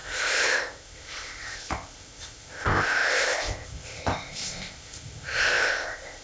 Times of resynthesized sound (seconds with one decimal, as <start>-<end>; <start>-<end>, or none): 0.0-6.2